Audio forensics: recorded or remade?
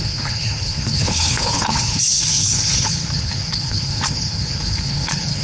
remade